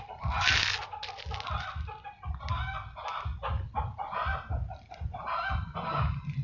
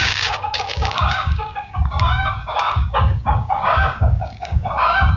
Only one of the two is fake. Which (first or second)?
second